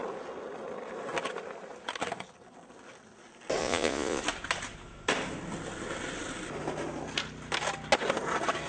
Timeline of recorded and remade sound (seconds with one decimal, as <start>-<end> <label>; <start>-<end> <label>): 0.0-3.6 recorded; 3.6-4.2 remade; 4.2-8.7 recorded